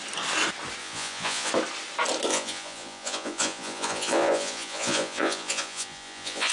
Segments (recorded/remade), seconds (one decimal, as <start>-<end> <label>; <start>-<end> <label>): 0.0-0.8 recorded; 0.8-1.5 remade; 1.5-2.3 recorded; 2.3-6.5 remade